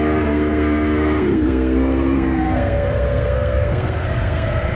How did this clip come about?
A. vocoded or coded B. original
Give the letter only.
A